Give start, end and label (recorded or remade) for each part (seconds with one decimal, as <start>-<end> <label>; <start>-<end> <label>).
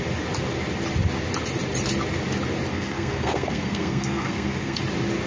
0.0-2.7 recorded; 2.7-4.8 remade; 4.8-5.3 recorded